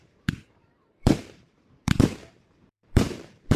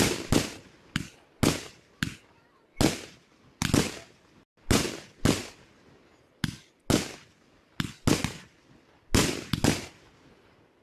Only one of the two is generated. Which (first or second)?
first